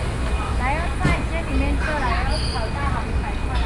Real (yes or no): yes